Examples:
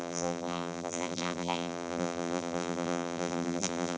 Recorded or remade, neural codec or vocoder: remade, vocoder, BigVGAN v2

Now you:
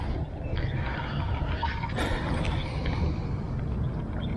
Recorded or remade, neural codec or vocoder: recorded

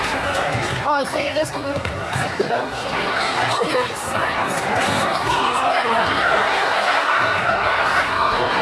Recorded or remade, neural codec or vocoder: remade, codec, SNAC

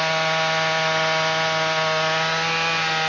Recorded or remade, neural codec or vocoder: recorded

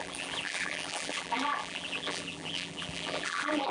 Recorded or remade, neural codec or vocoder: remade, vocoder, BigVGAN v2